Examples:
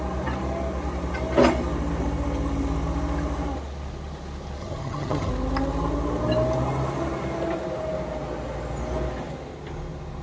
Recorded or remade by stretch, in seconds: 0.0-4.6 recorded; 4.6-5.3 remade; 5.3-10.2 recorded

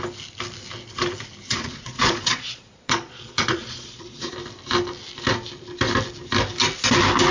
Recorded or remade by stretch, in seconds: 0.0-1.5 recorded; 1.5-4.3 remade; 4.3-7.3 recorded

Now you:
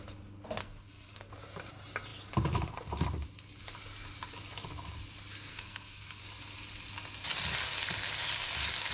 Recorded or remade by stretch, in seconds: 0.0-0.6 recorded; 0.6-1.3 remade; 1.3-5.5 recorded; 5.5-6.2 remade; 6.2-8.9 recorded

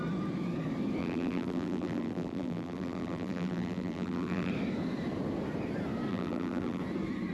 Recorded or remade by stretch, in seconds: 0.0-1.0 recorded; 1.0-4.5 remade; 4.5-6.1 recorded; 6.1-6.8 remade; 6.8-7.3 recorded